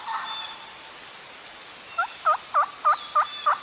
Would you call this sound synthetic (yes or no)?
no